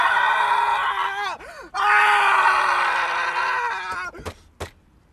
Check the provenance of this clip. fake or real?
real